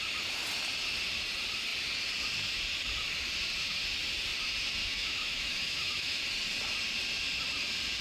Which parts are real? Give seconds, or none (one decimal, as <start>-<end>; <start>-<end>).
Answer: 0.0-4.8; 6.2-8.0